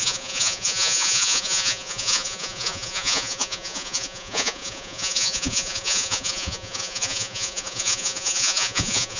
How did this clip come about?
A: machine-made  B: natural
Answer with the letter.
A